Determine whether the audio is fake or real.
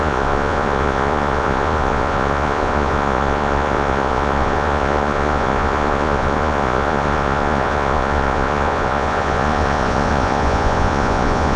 fake